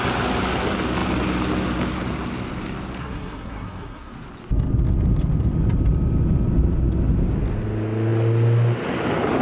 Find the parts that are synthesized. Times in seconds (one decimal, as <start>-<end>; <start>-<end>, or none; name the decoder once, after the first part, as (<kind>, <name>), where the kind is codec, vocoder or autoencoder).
3.0-4.1 (codec, SNAC)